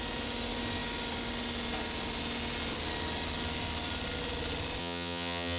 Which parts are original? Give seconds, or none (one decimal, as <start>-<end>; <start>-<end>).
0.0-4.8